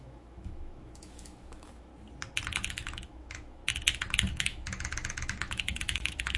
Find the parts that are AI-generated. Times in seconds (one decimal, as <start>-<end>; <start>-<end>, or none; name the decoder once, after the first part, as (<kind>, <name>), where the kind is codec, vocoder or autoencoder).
0.0-1.9 (autoencoder, DAC-VAE); 2.7-3.6; 4.3-6.4